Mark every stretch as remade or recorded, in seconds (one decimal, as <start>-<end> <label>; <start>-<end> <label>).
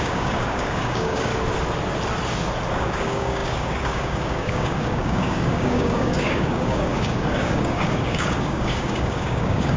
0.0-1.3 remade; 1.3-2.7 recorded; 2.7-9.8 remade